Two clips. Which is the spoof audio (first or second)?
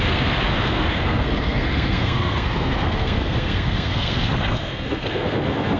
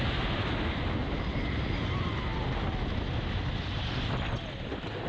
first